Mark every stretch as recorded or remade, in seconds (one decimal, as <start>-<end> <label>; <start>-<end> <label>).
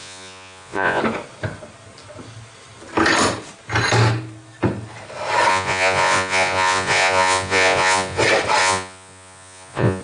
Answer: 0.0-1.0 remade; 1.0-5.5 recorded; 5.5-8.2 remade; 8.2-8.6 recorded; 8.6-10.0 remade